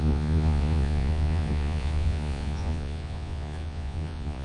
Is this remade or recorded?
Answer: remade